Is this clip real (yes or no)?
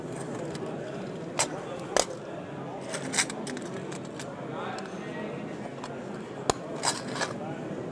yes